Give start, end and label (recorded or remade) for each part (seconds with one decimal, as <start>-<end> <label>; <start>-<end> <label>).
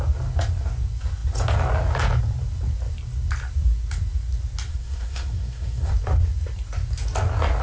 0.0-4.7 recorded; 4.7-5.9 remade; 5.9-7.6 recorded